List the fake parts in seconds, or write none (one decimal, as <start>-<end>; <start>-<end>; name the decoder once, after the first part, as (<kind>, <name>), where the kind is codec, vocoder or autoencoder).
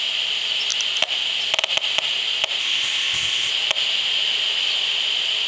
2.6-3.5 (codec, ZipCodec)